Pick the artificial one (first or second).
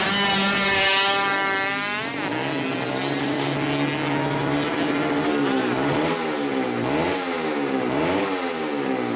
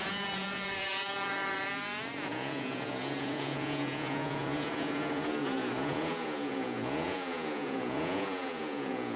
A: second